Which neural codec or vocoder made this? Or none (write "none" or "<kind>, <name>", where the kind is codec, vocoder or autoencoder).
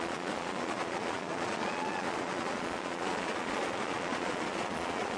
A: vocoder, Vocos